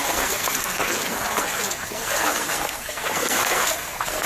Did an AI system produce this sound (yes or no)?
yes